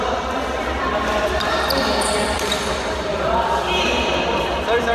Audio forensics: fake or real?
fake